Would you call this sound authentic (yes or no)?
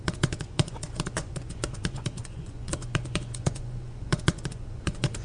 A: no